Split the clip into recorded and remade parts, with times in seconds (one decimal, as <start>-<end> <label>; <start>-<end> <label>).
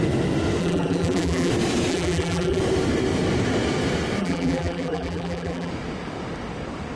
0.0-0.6 recorded; 0.6-1.5 remade; 1.5-1.9 recorded; 1.9-2.6 remade; 2.6-4.2 recorded; 4.2-5.7 remade; 5.7-7.0 recorded